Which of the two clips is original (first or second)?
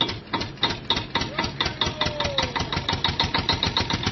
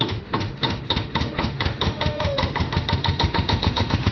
first